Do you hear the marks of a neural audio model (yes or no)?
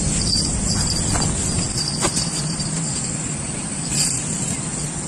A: yes